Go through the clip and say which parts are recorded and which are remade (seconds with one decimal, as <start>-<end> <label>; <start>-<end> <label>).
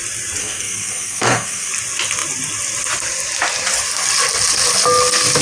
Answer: 0.0-0.4 recorded; 0.4-1.7 remade; 1.7-5.4 recorded